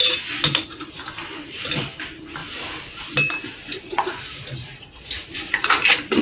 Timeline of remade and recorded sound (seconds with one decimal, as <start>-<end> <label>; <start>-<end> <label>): 0.0-3.7 recorded; 3.7-5.8 remade; 5.8-6.2 recorded